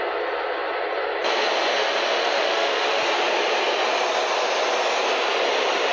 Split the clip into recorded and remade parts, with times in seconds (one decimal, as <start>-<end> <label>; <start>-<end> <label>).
0.0-2.2 recorded; 2.2-3.0 remade; 3.0-5.9 recorded